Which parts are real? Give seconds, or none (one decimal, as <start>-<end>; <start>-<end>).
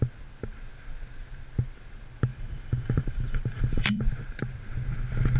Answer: 0.0-2.3; 4.0-5.4